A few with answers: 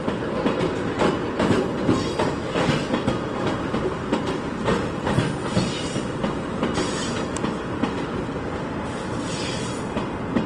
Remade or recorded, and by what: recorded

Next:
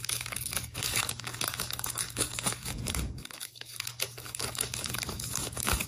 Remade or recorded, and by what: remade, codec, DAC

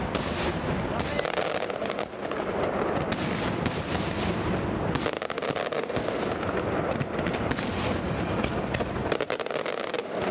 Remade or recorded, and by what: recorded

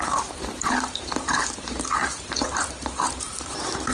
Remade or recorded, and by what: remade, vocoder, BigVGAN v2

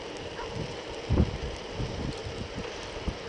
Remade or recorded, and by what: remade, vocoder, BigVGAN v2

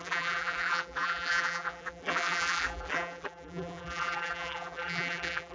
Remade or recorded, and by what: remade, vocoder, BigVGAN v2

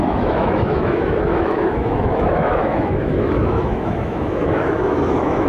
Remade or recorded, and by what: remade, autoencoder, DAC-VAE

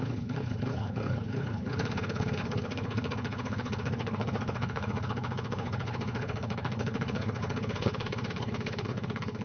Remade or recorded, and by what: remade, codec, HILCodec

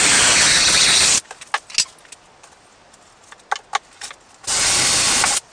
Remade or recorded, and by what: recorded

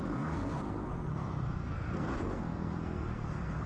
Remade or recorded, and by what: remade, codec, SNAC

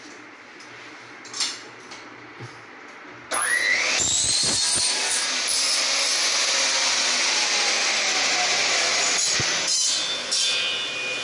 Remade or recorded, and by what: recorded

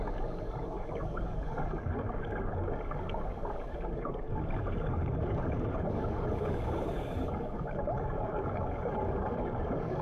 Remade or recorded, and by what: remade, codec, DAC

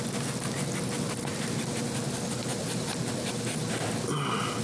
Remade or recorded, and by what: recorded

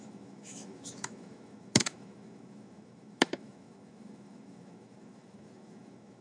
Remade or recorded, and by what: remade, autoencoder, DAC-VAE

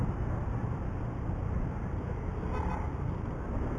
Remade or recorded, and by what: recorded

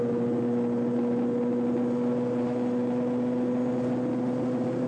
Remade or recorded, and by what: recorded